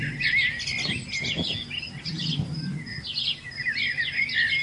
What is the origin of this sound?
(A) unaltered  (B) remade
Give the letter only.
A